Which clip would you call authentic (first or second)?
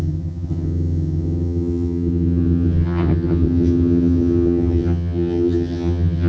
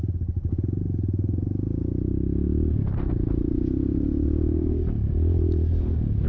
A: second